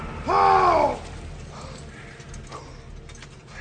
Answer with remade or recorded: recorded